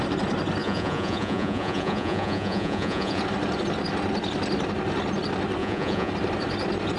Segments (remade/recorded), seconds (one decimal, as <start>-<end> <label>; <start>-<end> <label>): 0.0-0.6 recorded; 0.6-3.2 remade; 3.2-5.6 recorded; 5.6-6.1 remade; 6.1-7.0 recorded